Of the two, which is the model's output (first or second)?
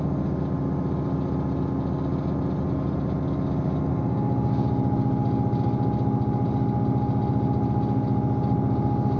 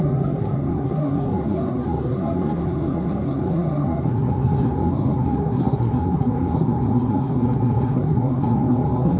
second